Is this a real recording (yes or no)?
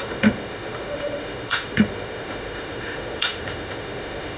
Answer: no